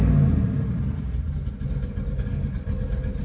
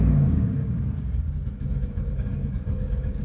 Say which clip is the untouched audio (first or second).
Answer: first